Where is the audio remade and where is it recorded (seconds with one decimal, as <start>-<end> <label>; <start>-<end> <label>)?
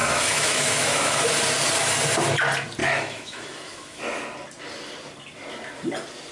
0.0-1.2 remade; 1.2-2.8 recorded; 2.8-4.0 remade; 4.0-6.3 recorded